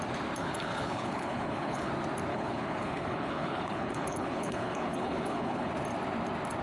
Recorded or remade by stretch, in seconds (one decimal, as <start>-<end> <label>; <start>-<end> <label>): 0.0-0.4 recorded; 0.4-1.9 remade; 1.9-2.3 recorded; 2.3-5.7 remade; 5.7-6.6 recorded